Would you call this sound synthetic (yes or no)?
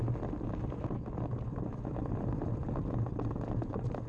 no